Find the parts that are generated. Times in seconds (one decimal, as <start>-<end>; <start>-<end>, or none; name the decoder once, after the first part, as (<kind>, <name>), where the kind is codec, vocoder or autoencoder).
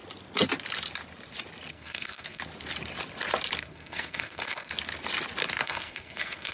1.7-2.4 (codec, SNAC); 3.6-4.7; 5.6-6.5